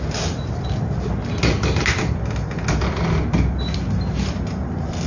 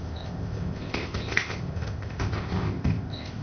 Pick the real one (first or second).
first